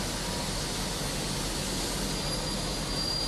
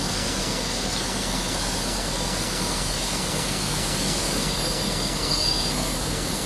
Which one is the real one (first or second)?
first